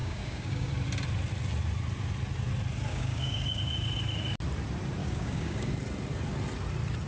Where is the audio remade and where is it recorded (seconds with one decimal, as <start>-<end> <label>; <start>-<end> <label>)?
0.0-0.7 remade; 0.7-2.9 recorded; 2.9-3.6 remade; 3.6-5.0 recorded; 5.0-5.7 remade; 5.7-7.1 recorded